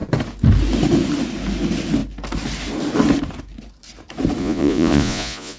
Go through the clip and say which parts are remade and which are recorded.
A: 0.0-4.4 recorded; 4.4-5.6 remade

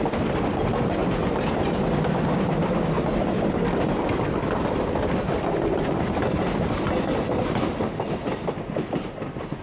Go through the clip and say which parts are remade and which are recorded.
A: 0.0-9.6 recorded

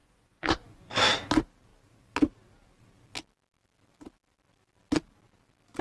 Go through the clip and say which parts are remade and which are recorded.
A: 0.0-0.9 remade; 0.9-5.8 recorded

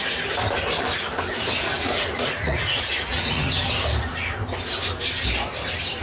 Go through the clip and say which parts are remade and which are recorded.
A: 0.0-1.7 recorded; 1.7-3.5 remade; 3.5-6.0 recorded

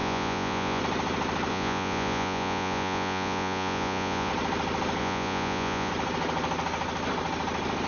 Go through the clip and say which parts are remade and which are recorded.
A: 0.0-0.8 remade; 0.8-1.5 recorded; 1.5-4.3 remade; 4.3-5.0 recorded; 5.0-5.9 remade; 5.9-7.9 recorded

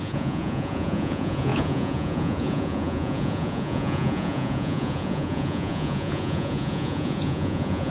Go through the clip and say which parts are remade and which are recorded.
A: 0.0-7.9 remade

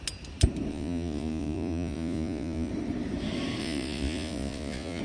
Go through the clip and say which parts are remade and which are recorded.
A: 0.0-0.7 recorded; 0.7-2.7 remade; 2.7-3.6 recorded; 3.6-5.0 remade

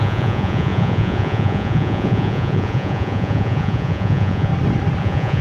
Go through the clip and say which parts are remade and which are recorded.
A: 0.0-4.5 remade; 4.5-5.0 recorded; 5.0-5.4 remade